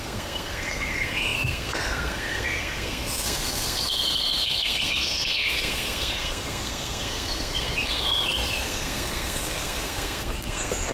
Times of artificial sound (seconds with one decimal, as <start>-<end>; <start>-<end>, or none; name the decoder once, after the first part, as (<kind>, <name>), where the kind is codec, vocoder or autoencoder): 0.0-10.9 (codec, SNAC)